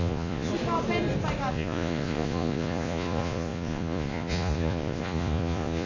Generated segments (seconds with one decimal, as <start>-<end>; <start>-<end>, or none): 0.0-0.5; 1.5-5.9